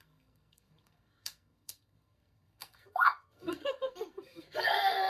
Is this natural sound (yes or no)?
no